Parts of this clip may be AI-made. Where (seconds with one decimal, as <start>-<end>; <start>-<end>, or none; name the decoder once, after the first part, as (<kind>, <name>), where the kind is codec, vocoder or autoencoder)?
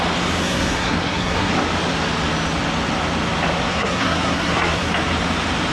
0.4-1.5 (codec, SNAC); 3.7-4.9